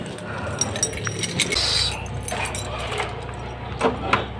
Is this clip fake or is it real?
real